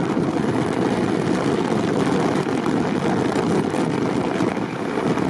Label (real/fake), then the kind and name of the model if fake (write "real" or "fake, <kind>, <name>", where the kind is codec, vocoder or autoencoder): real